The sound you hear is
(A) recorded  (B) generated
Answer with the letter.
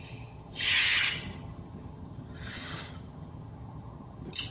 B